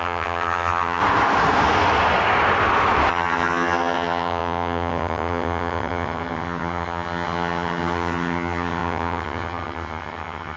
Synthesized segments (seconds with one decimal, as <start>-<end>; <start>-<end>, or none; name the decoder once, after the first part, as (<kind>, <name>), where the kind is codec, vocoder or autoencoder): 0.0-1.0 (vocoder, HiFi-GAN); 3.1-10.6